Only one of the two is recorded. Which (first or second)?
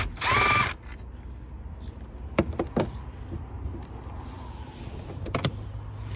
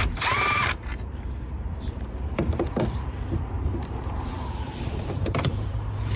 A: first